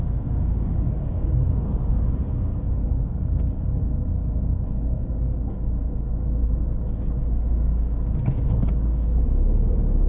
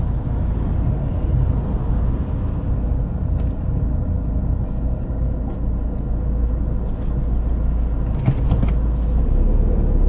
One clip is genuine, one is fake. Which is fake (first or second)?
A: first